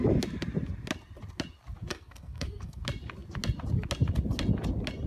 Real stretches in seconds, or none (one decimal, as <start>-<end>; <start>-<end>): 0.0-1.9; 2.8-5.1